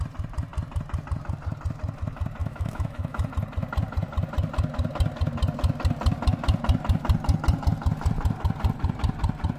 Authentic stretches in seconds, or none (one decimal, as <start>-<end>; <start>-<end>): 0.0-2.4; 3.3-9.6